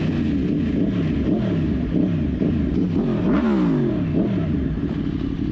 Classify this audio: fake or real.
real